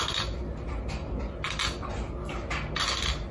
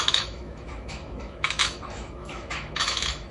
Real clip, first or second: first